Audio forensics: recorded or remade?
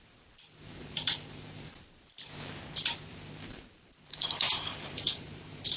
remade